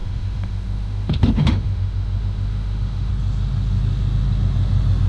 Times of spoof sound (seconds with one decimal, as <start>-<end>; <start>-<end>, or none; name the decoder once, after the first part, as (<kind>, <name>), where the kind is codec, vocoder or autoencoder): 0.0-3.1 (autoencoder, DAC-VAE)